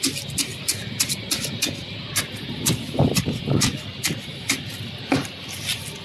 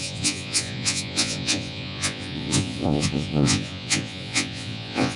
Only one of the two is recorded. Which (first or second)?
first